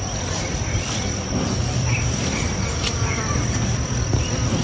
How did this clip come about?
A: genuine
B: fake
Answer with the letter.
B